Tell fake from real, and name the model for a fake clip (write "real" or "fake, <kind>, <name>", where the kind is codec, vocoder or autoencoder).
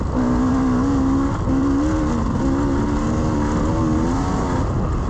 real